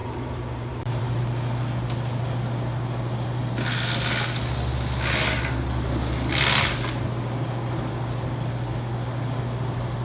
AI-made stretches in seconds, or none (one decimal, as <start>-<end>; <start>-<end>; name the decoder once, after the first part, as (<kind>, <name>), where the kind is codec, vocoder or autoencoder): 0.0-1.2 (vocoder, BigVGAN v2)